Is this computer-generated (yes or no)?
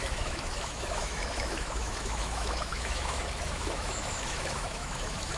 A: yes